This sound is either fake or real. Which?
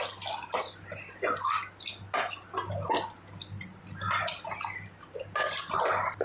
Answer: real